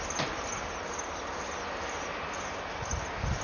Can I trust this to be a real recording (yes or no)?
yes